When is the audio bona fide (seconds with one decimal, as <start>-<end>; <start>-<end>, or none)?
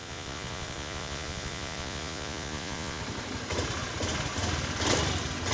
3.0-5.5